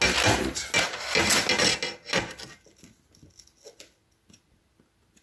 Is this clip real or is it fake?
real